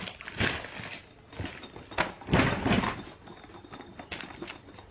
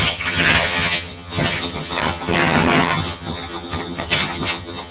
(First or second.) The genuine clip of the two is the first